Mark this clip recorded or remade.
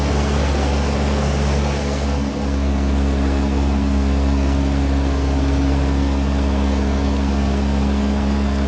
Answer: remade